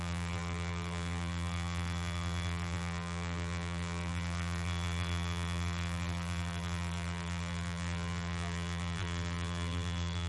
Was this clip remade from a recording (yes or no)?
yes